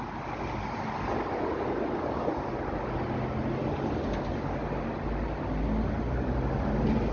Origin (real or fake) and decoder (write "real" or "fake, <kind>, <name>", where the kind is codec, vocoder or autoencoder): real